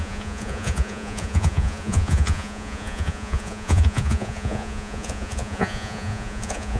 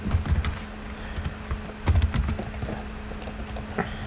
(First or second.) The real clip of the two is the second